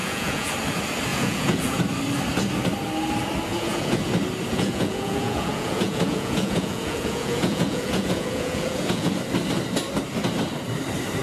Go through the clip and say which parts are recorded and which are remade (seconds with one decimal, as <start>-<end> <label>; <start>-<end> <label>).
0.0-0.5 remade; 0.5-1.1 recorded; 1.1-1.8 remade; 1.8-3.5 recorded; 3.5-4.1 remade; 4.1-4.5 recorded; 4.5-9.1 remade; 9.1-11.2 recorded